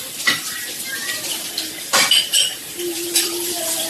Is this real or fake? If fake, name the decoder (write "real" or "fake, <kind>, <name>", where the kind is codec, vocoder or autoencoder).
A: fake, vocoder, BigVGAN v2